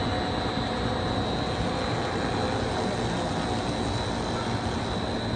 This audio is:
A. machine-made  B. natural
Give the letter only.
B